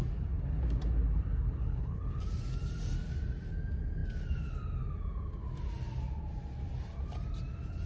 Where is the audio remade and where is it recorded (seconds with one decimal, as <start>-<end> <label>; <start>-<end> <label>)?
0.0-1.6 recorded; 1.6-2.2 remade; 2.2-7.9 recorded